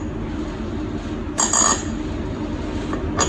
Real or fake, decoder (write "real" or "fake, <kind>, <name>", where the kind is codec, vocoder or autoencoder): real